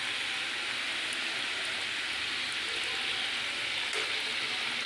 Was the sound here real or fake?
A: real